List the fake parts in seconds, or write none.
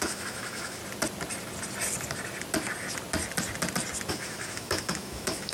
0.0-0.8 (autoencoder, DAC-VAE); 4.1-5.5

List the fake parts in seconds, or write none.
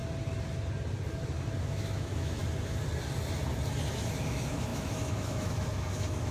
1.6-2.4 (autoencoder, DAC-VAE); 3.9-6.3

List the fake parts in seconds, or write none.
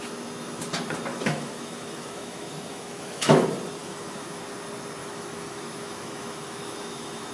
1.1-3.4 (autoencoder, DAC-VAE); 3.8-4.4; 5.0-7.3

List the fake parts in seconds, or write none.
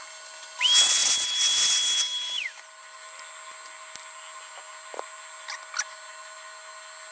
none